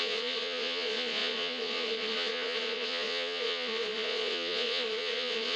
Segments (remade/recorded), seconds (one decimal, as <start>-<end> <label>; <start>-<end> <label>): 0.0-5.6 remade